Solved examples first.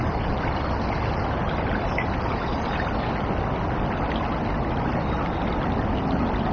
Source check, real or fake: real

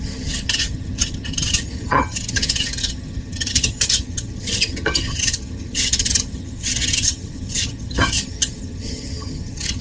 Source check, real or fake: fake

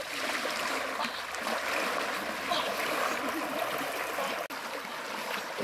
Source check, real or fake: real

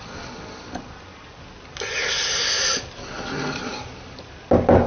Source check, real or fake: real